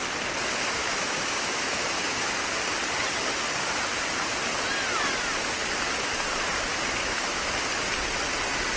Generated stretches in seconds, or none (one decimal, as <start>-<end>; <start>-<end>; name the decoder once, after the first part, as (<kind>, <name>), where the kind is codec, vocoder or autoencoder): 0.8-2.3 (autoencoder, DAC-VAE); 7.0-7.5